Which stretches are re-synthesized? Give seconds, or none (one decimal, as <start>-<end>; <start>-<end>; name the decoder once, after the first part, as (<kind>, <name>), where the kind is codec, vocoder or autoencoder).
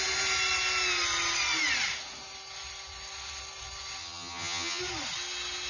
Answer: 4.0-4.8 (vocoder, HiFi-GAN)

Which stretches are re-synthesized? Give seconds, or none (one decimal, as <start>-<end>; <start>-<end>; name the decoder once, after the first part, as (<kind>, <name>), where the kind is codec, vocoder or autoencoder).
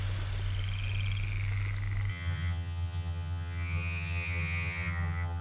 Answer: 2.1-5.4 (vocoder, HiFi-GAN)